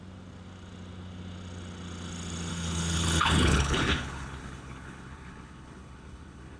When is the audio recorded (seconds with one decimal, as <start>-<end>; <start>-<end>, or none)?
0.0-2.5